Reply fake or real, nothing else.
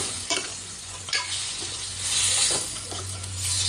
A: fake